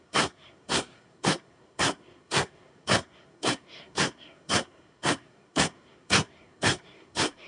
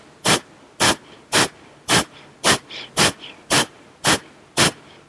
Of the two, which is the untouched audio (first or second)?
second